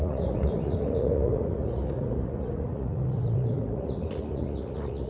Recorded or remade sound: remade